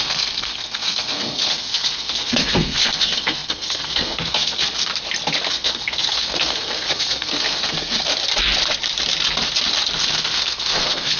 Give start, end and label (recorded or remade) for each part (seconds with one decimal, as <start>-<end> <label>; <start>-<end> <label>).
0.0-4.9 remade; 4.9-5.5 recorded; 5.5-8.1 remade; 8.1-10.0 recorded; 10.0-11.2 remade